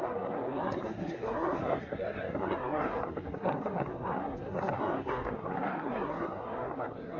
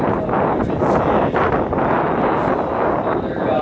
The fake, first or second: first